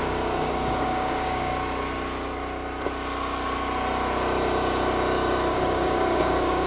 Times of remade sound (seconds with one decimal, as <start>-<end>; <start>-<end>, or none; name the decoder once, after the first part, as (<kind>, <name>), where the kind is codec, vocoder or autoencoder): 0.0-1.5 (codec, DAC); 5.5-6.7